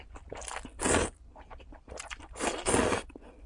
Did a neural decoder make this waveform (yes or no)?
no